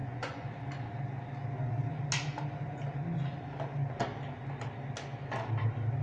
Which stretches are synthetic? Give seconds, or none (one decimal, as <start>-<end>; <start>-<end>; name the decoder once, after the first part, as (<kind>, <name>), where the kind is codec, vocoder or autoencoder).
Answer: 0.0-0.5 (vocoder, Vocos)